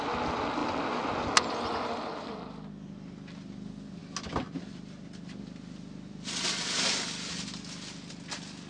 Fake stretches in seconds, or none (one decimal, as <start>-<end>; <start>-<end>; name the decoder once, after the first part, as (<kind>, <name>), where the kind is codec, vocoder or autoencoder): none